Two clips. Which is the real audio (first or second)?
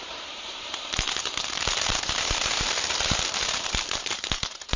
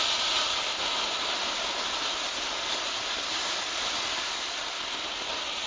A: second